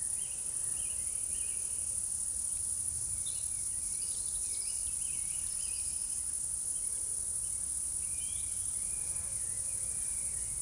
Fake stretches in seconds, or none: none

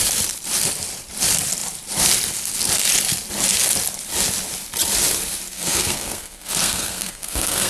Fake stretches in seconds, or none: 5.5-7.7 (codec, SNAC)